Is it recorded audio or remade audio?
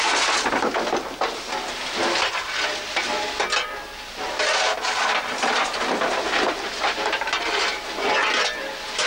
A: recorded